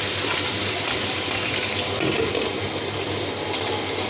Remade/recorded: recorded